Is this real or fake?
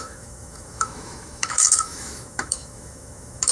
fake